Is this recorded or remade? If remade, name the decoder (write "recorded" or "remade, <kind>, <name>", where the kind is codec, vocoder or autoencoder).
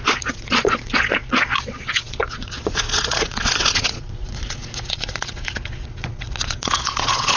remade, vocoder, Vocos